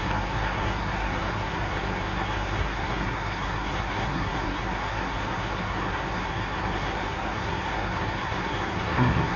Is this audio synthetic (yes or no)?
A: yes